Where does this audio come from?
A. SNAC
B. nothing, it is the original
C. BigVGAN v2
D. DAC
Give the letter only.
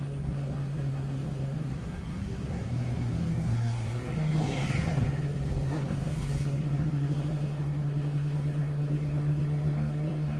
A